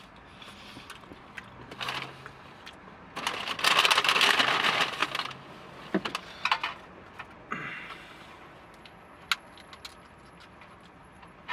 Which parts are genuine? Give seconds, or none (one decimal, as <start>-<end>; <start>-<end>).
0.0-11.5